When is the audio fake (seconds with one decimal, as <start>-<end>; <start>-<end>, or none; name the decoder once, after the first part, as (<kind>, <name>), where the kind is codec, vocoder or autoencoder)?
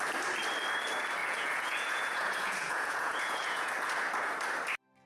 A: 1.2-3.7 (vocoder, Vocos)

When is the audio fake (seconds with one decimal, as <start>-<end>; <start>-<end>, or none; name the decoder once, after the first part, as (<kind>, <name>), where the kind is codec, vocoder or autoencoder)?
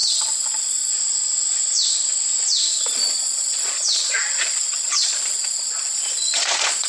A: 0.0-0.9 (vocoder, Vocos); 2.7-6.9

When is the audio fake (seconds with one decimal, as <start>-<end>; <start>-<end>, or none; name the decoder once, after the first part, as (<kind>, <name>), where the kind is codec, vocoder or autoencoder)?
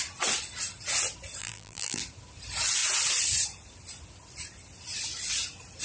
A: 1.4-2.0 (vocoder, BigVGAN v2)